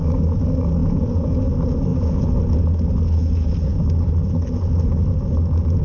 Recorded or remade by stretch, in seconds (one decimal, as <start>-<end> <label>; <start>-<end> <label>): 0.0-0.8 recorded; 0.8-1.4 remade; 1.4-1.9 recorded; 1.9-2.4 remade; 2.4-3.2 recorded; 3.2-3.8 remade; 3.8-5.8 recorded

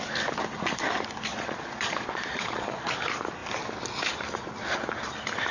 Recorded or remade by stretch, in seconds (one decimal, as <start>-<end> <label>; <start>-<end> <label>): 0.0-1.3 recorded; 1.3-2.9 remade; 2.9-5.5 recorded